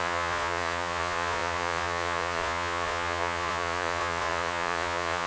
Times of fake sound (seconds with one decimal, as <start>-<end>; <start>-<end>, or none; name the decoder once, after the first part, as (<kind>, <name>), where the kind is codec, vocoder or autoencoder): 0.0-5.3 (vocoder, Vocos)